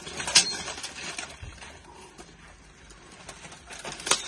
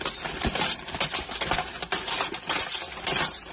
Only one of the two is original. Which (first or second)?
first